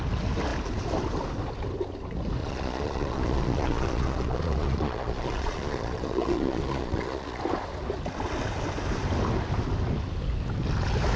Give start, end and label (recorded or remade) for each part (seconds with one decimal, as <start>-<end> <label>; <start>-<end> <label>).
0.0-2.4 recorded; 2.4-7.4 remade; 7.4-11.2 recorded